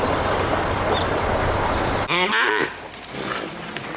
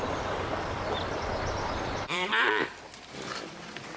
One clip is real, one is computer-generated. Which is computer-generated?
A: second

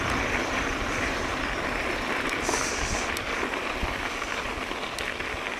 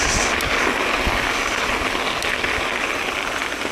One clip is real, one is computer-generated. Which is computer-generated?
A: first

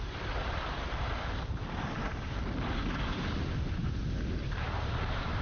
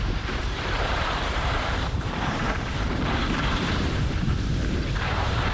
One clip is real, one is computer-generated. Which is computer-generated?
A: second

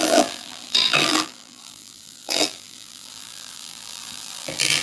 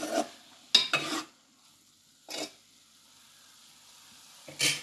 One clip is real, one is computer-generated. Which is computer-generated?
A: first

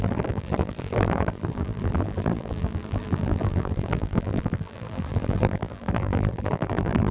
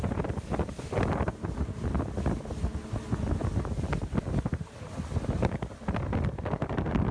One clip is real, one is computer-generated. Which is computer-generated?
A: first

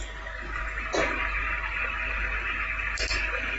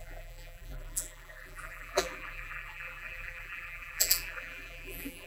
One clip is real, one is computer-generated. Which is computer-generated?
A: second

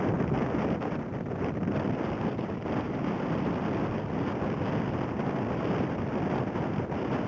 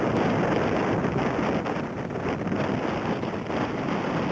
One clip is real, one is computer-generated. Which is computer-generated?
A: first